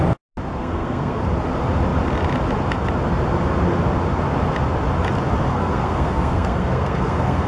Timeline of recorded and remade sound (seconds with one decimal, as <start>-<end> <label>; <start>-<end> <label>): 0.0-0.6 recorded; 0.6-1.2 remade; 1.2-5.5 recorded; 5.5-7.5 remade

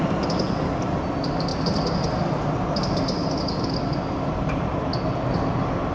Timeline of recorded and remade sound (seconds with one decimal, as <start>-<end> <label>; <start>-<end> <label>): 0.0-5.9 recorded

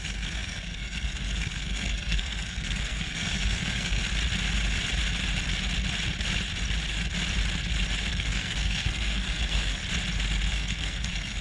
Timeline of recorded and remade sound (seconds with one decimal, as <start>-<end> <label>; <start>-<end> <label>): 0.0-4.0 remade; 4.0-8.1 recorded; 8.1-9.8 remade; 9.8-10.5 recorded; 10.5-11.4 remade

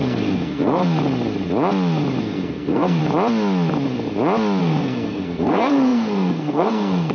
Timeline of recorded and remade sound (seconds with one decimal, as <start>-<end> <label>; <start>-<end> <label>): 0.0-0.8 remade; 0.8-2.2 recorded; 2.2-3.0 remade; 3.0-4.6 recorded; 4.6-7.1 remade

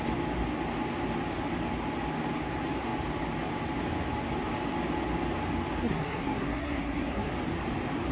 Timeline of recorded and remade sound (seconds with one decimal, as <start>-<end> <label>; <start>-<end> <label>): 0.0-5.8 recorded; 5.8-7.3 remade; 7.3-8.1 recorded

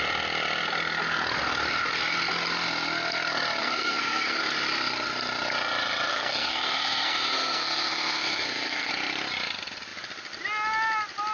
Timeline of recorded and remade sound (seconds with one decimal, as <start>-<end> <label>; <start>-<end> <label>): 0.0-3.6 recorded; 3.6-4.4 remade; 4.4-6.1 recorded; 6.1-8.9 remade; 8.9-11.3 recorded

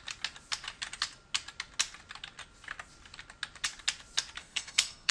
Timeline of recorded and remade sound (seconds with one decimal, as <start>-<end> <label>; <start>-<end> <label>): 0.0-4.4 recorded; 4.4-5.1 remade

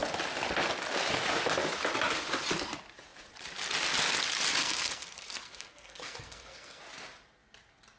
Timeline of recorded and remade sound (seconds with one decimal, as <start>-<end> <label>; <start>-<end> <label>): 0.0-4.6 recorded; 4.6-6.8 remade; 6.8-8.0 recorded